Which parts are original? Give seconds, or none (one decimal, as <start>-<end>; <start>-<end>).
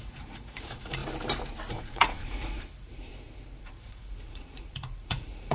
1.0-1.7; 3.1-3.6